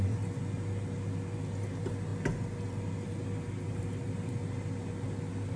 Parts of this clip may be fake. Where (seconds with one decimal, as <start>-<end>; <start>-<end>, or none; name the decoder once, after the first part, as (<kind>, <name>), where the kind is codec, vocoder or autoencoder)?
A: none